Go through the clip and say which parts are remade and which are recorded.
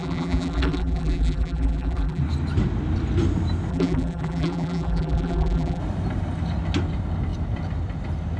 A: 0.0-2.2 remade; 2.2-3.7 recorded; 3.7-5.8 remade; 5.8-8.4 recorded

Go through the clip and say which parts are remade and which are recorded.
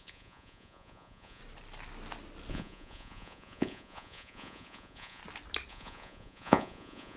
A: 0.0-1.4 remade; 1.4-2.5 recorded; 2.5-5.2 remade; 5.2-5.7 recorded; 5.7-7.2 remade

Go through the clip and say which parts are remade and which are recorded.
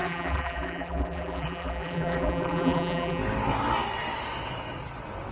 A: 0.0-3.2 remade; 3.2-5.3 recorded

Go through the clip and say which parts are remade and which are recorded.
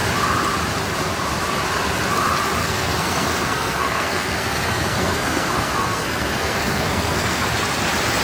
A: 0.0-2.6 recorded; 2.6-7.5 remade; 7.5-8.2 recorded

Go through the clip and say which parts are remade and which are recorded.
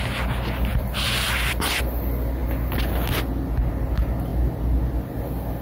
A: 0.0-0.7 recorded; 0.7-1.8 remade; 1.8-5.6 recorded